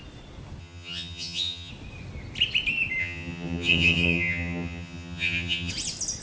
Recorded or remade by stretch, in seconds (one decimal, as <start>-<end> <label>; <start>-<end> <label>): 0.0-0.6 recorded; 0.6-1.7 remade; 1.7-3.0 recorded; 3.0-5.7 remade; 5.7-6.2 recorded